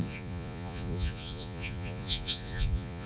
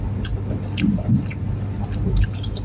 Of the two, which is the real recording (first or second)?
second